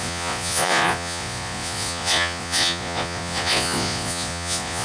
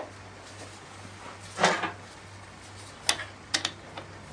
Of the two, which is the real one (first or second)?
second